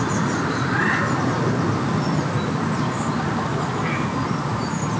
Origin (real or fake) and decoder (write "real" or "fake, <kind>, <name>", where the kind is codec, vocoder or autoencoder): real